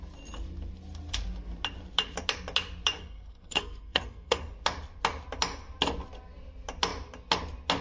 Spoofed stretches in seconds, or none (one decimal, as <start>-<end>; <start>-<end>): 3.0-4.4